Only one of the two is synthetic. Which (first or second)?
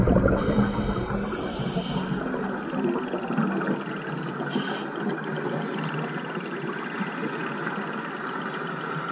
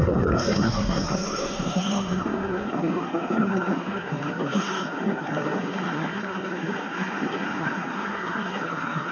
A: second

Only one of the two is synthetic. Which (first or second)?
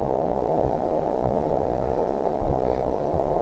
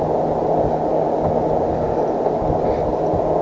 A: first